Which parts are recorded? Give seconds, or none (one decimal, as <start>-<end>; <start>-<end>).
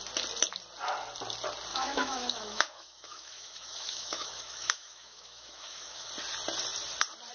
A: 0.0-1.7; 6.1-7.3